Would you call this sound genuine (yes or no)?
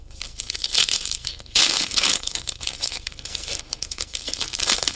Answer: no